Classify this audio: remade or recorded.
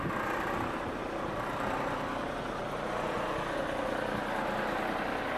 recorded